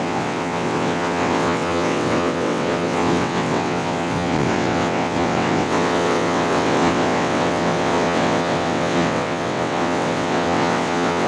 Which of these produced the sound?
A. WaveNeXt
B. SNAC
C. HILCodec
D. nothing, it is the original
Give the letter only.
A